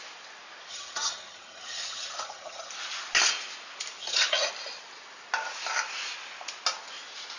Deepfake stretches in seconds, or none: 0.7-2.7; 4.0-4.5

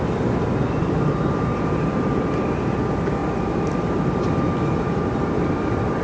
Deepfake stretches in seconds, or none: 0.8-2.3; 3.2-6.0

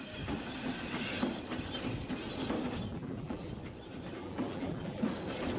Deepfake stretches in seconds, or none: 2.9-3.5; 4.2-5.0

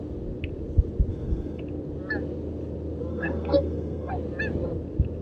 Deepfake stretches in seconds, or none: 1.1-1.6; 3.1-4.1

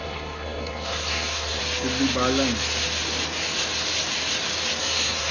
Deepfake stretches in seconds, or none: 0.0-1.6; 4.8-5.3